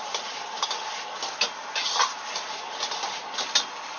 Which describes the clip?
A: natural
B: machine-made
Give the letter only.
A